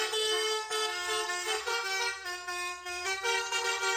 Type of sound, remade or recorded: remade